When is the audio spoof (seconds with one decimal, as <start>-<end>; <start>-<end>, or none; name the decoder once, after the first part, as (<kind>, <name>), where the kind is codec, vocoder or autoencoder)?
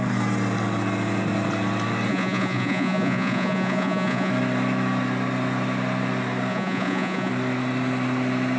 2.1-4.3 (vocoder, Vocos); 6.5-7.3